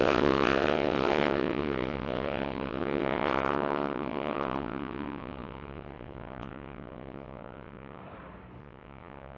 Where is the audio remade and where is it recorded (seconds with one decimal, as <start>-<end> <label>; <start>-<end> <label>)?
0.0-8.0 remade; 8.0-8.6 recorded; 8.6-9.4 remade